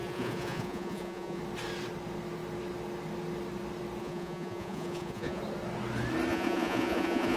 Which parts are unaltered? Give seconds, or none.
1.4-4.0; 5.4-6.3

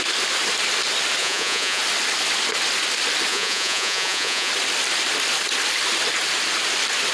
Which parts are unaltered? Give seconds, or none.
0.0-1.2; 1.8-3.3; 4.5-7.1

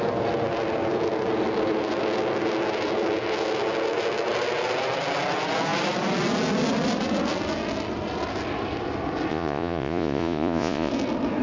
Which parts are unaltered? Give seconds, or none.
0.0-9.3; 10.9-11.4

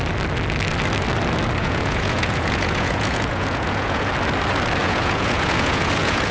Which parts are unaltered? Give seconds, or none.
0.0-1.6; 4.1-4.8

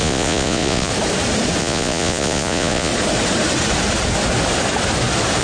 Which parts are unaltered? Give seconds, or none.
0.9-1.6; 2.9-5.4

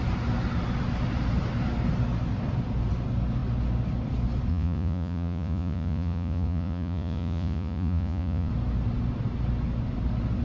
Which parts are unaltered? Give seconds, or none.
0.0-4.5; 8.5-10.4

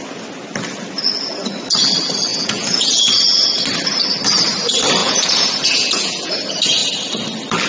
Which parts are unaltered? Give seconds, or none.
0.0-2.3; 3.1-5.0; 6.3-7.7